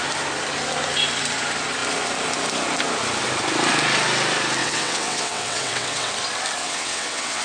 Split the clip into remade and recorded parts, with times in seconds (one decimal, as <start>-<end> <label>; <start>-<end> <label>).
0.0-4.6 recorded; 4.6-6.1 remade; 6.1-6.6 recorded; 6.6-7.4 remade